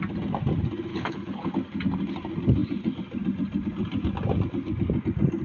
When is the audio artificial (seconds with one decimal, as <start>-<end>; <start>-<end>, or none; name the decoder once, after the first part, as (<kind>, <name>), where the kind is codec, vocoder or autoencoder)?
0.9-1.5 (codec, HILCodec)